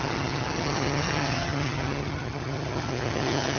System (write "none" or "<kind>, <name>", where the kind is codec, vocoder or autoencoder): vocoder, HiFi-GAN